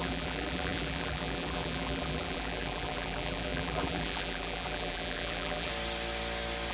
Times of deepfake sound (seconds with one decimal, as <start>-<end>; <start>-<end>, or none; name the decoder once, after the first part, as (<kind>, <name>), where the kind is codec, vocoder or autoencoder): 0.0-5.7 (vocoder, BigVGAN v2)